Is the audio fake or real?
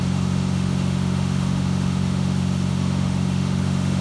fake